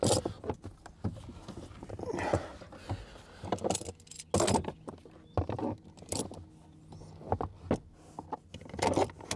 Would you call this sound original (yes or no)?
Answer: yes